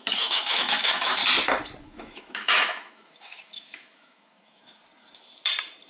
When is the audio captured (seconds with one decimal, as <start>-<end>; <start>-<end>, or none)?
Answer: 1.2-1.8; 4.8-5.9